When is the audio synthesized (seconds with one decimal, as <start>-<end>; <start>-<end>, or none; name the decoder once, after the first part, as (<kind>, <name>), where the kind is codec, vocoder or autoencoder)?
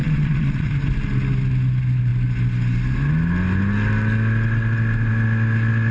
0.0-0.7 (vocoder, Vocos)